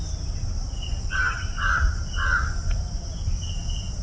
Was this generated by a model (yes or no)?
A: no